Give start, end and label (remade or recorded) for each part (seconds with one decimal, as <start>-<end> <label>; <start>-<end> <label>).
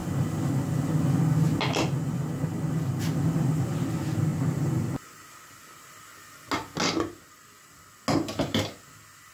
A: 0.0-9.3 recorded